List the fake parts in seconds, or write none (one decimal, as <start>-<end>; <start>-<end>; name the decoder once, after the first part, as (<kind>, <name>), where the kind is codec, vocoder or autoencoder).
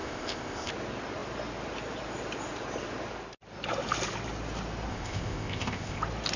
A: 0.0-0.7 (codec, ZipCodec); 4.9-6.0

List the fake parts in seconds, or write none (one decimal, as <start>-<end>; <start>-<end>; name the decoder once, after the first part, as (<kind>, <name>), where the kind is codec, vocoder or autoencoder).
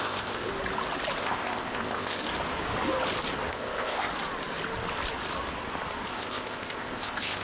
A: 0.0-0.5 (codec, ZipCodec); 1.2-2.2; 3.5-4.1; 6.1-7.4